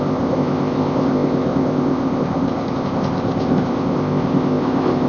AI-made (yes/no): yes